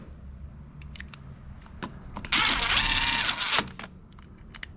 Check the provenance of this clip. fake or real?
real